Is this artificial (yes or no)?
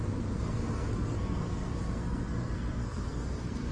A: yes